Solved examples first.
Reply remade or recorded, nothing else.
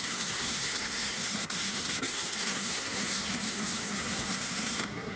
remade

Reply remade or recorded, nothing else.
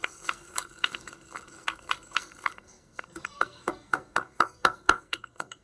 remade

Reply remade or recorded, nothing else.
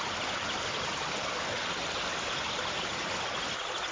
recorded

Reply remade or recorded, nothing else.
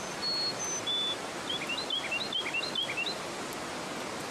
recorded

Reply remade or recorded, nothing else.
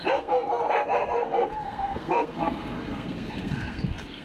remade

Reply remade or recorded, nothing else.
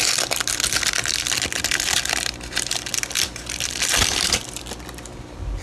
recorded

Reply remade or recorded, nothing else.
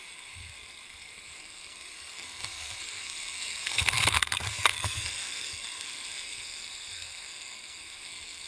remade